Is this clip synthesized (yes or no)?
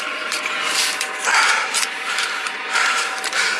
yes